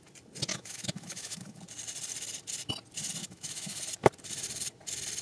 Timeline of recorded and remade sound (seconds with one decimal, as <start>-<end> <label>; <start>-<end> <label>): 0.0-0.5 recorded; 0.5-1.6 remade; 1.6-3.2 recorded; 3.2-3.8 remade; 3.8-5.2 recorded